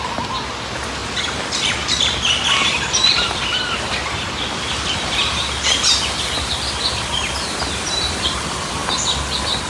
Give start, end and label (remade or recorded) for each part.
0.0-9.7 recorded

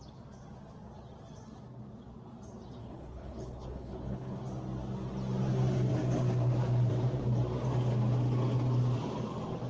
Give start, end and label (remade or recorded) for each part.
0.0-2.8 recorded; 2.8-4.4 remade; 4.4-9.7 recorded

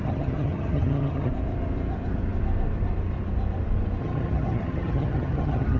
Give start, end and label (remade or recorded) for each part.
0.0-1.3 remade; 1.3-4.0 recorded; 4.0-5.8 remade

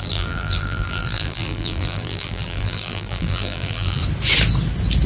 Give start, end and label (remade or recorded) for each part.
0.0-4.0 remade; 4.0-5.1 recorded